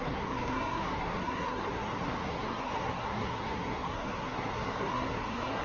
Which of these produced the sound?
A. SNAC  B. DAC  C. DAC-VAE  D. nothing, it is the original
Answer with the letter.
A